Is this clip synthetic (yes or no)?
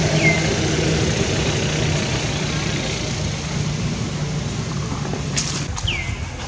no